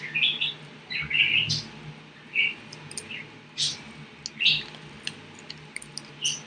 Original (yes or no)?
yes